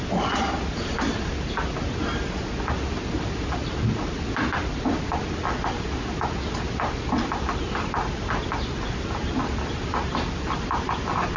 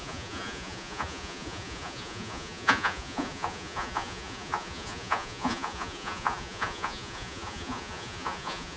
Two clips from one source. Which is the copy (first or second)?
second